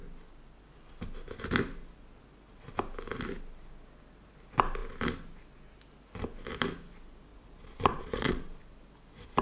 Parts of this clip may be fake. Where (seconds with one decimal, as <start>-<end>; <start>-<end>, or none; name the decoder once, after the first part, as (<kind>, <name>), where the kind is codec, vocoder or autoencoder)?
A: 7.3-8.6 (vocoder, Vocos)

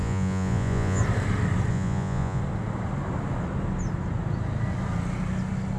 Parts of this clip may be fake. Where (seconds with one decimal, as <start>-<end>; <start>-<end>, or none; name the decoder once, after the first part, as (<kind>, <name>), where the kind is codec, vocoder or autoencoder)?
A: 0.0-1.0 (vocoder, Vocos); 1.7-2.4

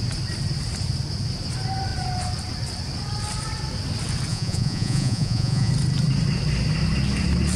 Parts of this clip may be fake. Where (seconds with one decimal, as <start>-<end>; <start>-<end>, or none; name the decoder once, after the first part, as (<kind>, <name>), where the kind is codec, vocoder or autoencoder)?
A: 4.3-5.7 (vocoder, Vocos)

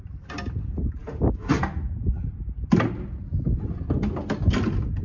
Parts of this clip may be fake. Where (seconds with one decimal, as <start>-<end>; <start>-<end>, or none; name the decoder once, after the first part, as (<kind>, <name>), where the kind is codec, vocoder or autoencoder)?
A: none

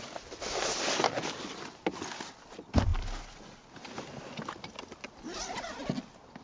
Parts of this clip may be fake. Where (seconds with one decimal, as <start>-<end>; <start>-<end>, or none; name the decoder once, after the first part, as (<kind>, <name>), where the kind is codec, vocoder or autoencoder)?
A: none